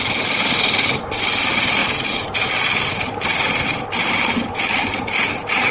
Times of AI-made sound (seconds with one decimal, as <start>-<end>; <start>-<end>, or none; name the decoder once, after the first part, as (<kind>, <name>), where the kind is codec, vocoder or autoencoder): none